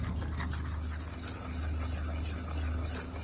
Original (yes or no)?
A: yes